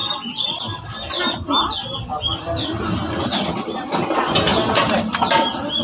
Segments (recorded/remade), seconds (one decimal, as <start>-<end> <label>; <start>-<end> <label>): 0.0-5.8 recorded